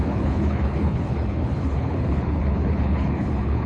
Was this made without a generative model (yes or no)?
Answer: no